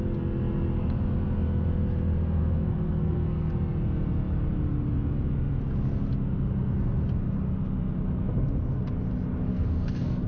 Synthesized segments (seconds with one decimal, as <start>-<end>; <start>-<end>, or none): 2.4-3.5; 9.5-10.3